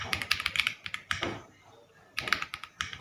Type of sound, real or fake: fake